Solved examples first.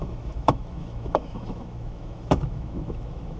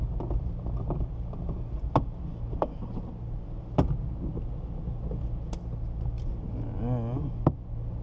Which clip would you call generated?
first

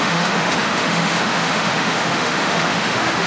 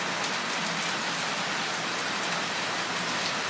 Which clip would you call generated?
first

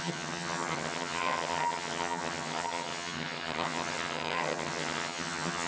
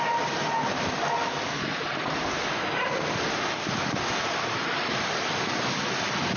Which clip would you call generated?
first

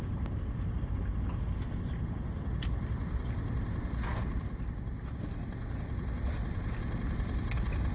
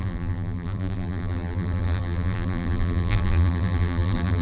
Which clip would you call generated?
second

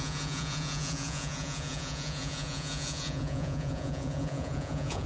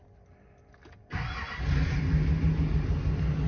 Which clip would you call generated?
first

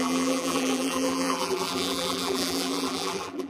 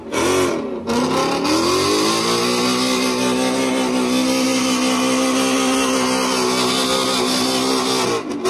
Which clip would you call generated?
first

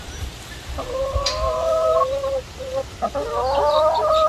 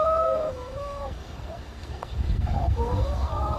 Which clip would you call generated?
second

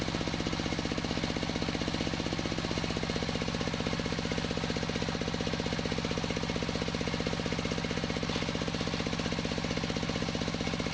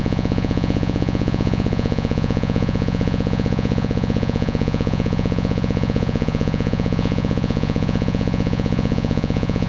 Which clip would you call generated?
second